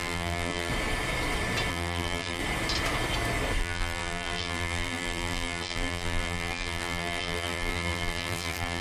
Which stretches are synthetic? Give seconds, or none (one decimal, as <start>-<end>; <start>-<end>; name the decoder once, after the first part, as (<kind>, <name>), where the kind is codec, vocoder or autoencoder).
0.0-0.7 (vocoder, BigVGAN v2); 1.7-2.4; 3.6-8.8